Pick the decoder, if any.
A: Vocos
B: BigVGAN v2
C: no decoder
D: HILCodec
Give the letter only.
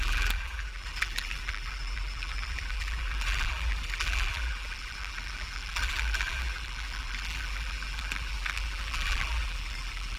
B